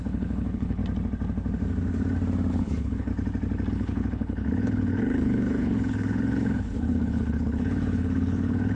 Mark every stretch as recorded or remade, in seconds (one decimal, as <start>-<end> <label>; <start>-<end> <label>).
0.0-0.8 remade; 0.8-2.5 recorded; 2.5-3.1 remade; 3.1-3.7 recorded; 3.7-8.8 remade